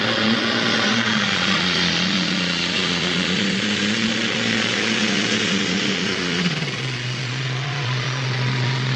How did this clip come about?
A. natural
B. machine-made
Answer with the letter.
B